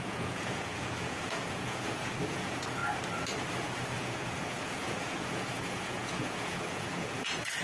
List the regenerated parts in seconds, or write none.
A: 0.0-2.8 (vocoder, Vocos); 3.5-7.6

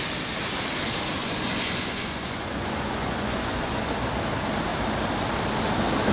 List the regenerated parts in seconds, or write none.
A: 1.2-3.9 (vocoder, Vocos)

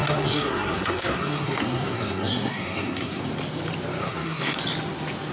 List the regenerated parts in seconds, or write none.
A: 0.0-3.2 (codec, SNAC); 4.0-4.6

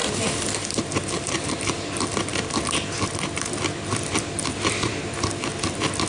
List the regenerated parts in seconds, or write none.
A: none

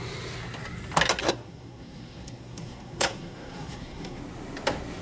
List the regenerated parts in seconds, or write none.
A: 1.2-4.2 (codec, SNAC)

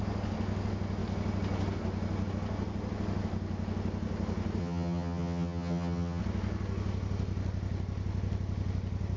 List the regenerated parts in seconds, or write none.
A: 4.6-6.2 (vocoder, HiFi-GAN)

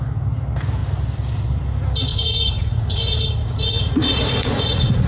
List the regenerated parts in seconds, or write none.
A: 2.1-5.1 (vocoder, Vocos)